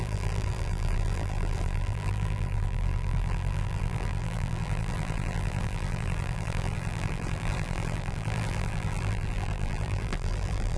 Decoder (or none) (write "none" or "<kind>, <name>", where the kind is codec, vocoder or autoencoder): vocoder, BigVGAN v2